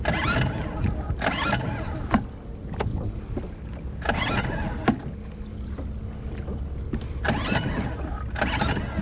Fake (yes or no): no